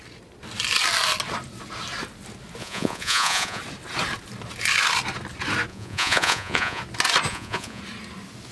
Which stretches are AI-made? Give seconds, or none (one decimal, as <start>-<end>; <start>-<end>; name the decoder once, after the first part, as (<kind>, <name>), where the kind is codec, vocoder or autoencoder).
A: 2.6-3.6 (vocoder, Vocos); 5.7-6.8; 7.3-7.8